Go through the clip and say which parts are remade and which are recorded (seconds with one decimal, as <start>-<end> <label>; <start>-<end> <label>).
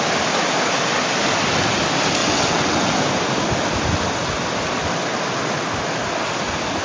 0.0-2.2 recorded; 2.2-2.9 remade; 2.9-6.8 recorded